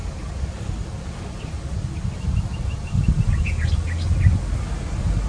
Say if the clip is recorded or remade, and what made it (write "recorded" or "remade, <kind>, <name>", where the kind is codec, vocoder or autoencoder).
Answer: recorded